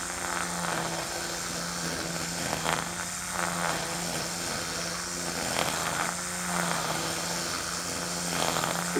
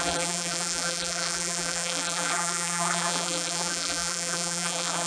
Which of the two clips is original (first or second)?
first